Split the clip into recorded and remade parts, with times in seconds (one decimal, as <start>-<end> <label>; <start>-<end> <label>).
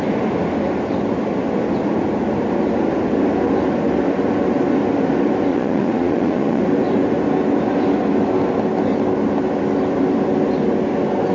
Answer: 0.0-5.5 recorded; 5.5-6.6 remade; 6.6-11.3 recorded